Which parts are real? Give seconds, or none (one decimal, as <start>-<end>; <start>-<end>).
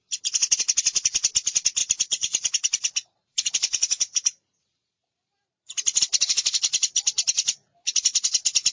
0.0-1.8; 6.0-8.7